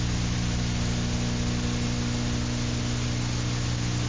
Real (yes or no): yes